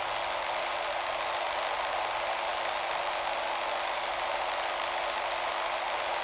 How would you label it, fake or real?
real